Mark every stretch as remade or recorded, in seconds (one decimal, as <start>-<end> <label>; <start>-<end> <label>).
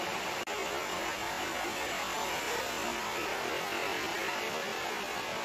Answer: 0.0-5.4 recorded